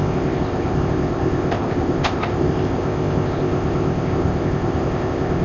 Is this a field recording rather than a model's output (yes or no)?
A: no